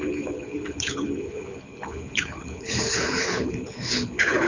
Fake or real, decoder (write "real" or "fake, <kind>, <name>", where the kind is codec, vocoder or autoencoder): fake, codec, HILCodec